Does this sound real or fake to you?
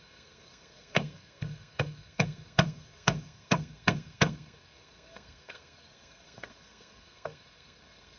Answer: fake